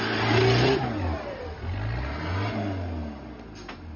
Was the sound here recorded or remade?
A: recorded